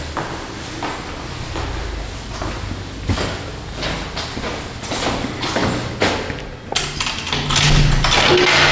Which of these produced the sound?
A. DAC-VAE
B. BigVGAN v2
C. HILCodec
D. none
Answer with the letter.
D